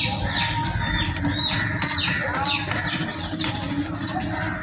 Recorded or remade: recorded